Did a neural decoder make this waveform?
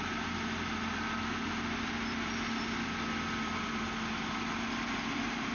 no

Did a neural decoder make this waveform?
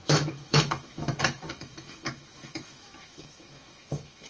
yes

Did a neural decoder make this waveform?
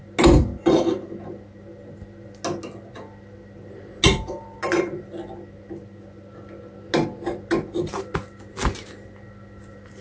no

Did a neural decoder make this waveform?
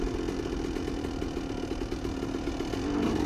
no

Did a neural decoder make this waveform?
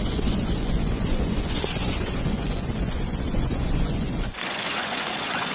yes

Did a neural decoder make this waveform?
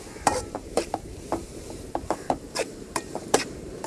yes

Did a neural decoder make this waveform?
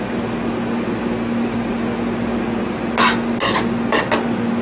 no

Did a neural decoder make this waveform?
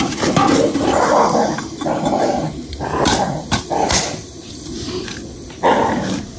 no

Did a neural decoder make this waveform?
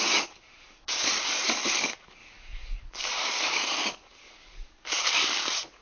yes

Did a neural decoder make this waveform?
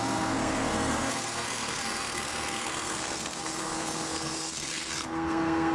yes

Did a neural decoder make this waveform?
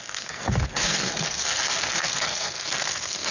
yes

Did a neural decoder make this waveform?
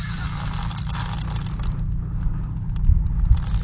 no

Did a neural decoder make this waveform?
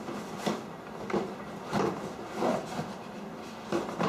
no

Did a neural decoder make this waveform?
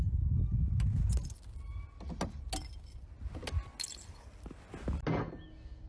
no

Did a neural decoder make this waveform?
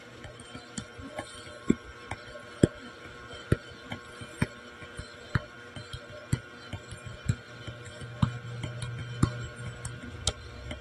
no